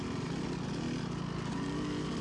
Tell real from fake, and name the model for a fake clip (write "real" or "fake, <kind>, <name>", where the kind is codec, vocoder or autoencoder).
real